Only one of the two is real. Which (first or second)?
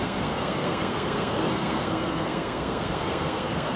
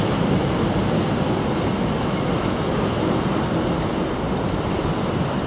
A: second